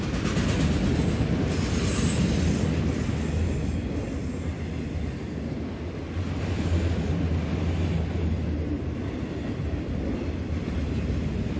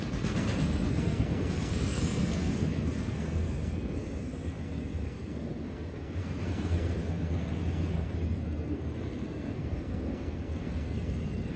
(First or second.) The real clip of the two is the first